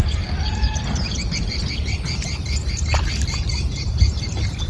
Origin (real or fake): fake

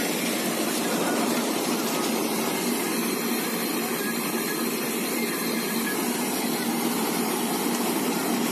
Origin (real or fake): fake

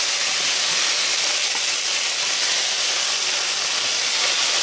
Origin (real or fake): real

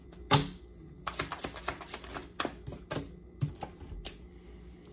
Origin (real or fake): real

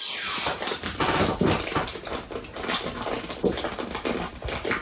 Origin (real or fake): real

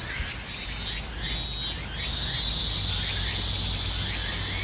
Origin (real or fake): real